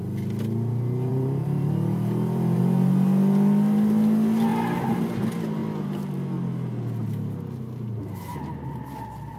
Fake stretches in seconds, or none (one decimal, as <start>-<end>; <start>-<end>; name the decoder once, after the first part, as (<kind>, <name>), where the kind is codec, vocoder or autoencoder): 1.1-2.6 (vocoder, BigVGAN v2)